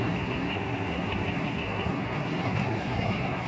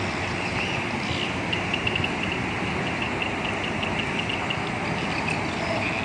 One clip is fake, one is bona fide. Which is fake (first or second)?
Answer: first